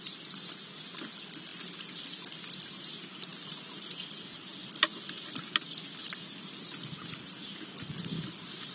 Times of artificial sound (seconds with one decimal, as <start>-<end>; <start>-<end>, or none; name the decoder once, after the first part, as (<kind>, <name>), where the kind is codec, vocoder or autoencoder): none